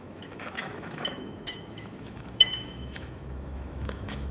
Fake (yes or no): yes